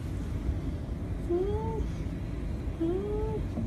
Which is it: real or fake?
real